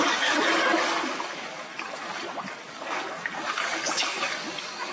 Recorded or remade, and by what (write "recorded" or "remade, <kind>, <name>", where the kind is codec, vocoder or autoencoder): remade, codec, DAC